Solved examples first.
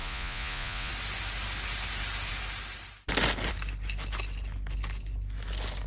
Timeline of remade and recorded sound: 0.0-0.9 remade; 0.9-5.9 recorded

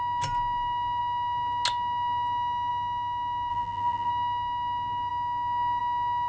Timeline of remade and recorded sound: 0.0-3.5 recorded; 3.5-4.1 remade; 4.1-6.3 recorded

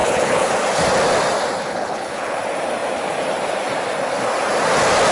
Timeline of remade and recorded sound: 0.0-0.5 remade; 0.5-1.6 recorded; 1.6-2.4 remade; 2.4-5.1 recorded

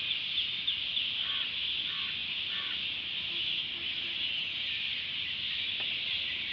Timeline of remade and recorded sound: 0.0-6.5 recorded

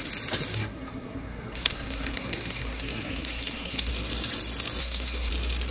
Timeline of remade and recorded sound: 0.0-0.5 recorded; 0.5-3.9 remade; 3.9-4.8 recorded; 4.8-5.3 remade; 5.3-5.7 recorded

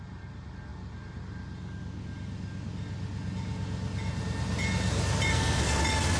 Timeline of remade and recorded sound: 0.0-5.3 recorded; 5.3-5.8 remade; 5.8-6.2 recorded